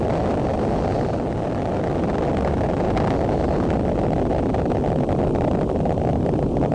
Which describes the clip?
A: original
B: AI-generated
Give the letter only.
A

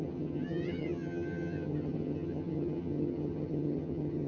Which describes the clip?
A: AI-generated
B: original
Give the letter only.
A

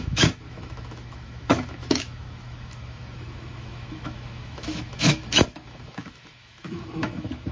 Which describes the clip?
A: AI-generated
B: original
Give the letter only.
A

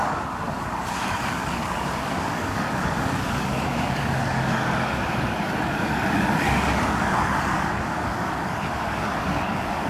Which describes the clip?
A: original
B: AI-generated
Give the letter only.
B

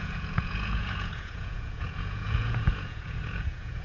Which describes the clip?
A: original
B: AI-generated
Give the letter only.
B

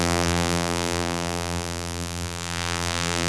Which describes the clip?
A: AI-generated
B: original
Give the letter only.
A